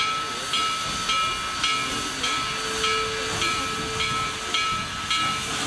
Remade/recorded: recorded